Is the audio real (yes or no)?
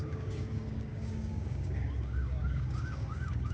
no